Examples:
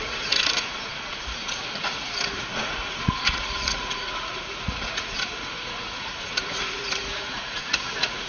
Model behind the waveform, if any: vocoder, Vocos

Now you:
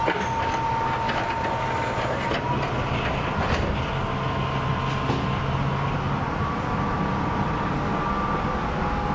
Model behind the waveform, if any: none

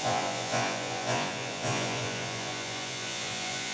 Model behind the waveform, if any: vocoder, Vocos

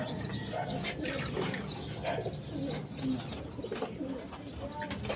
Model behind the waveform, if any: none